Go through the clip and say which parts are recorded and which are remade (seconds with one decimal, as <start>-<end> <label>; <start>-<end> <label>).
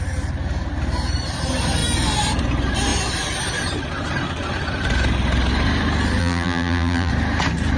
0.0-6.2 recorded; 6.2-7.1 remade; 7.1-7.8 recorded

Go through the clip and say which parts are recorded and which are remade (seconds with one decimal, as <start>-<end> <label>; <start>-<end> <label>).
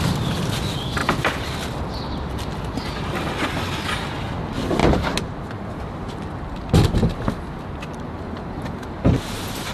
0.0-1.0 recorded; 1.0-1.5 remade; 1.5-9.7 recorded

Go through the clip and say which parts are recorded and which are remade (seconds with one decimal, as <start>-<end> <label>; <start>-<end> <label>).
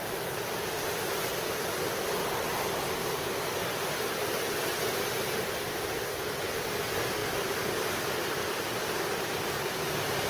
0.0-7.2 recorded; 7.2-8.1 remade; 8.1-10.3 recorded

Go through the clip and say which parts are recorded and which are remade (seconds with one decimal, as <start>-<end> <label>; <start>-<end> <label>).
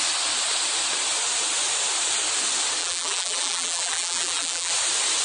0.0-2.8 recorded; 2.8-4.7 remade; 4.7-5.2 recorded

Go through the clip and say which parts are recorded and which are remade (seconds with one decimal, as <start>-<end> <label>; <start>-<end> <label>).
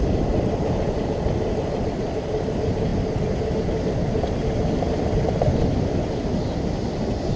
0.0-7.4 recorded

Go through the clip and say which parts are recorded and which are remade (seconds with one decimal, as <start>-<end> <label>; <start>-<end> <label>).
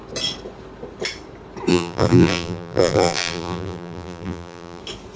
0.0-1.7 recorded; 1.7-4.8 remade; 4.8-5.2 recorded